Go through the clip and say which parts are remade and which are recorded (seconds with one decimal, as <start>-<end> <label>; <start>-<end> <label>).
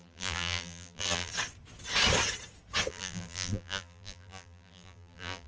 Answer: 0.0-1.3 remade; 1.3-2.9 recorded; 2.9-5.5 remade